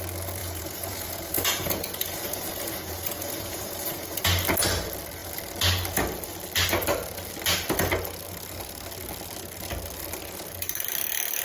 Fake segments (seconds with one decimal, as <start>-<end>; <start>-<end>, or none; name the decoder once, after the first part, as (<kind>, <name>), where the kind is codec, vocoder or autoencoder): 0.4-4.2 (vocoder, Vocos)